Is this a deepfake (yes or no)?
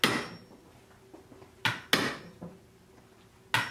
no